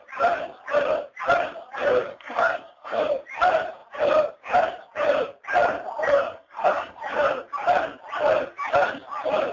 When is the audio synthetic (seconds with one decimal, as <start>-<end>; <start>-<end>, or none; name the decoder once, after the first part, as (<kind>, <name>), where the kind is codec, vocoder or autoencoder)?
2.1-3.0 (codec, SNAC); 6.1-7.0